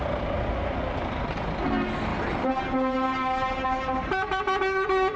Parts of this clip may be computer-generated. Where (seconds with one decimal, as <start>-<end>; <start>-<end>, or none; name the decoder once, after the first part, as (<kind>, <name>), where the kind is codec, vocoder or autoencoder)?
2.1-5.2 (vocoder, BigVGAN v2)